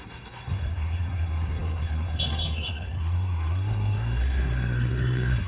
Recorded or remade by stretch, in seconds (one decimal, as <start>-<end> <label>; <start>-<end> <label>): 0.0-5.5 remade

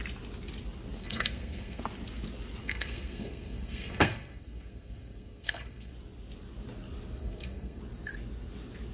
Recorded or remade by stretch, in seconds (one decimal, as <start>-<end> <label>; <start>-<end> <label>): 0.0-1.0 recorded; 1.0-1.8 remade; 1.8-2.6 recorded; 2.6-5.9 remade; 5.9-7.2 recorded; 7.2-7.8 remade; 7.8-8.9 recorded